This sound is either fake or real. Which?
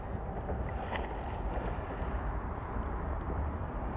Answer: real